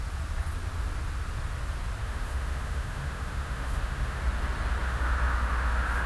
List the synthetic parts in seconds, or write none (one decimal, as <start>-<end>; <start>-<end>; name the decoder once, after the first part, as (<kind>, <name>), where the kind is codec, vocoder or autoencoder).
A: 2.0-4.2 (autoencoder, DAC-VAE); 4.8-6.1